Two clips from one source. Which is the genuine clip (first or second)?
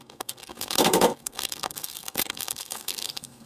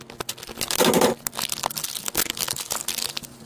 second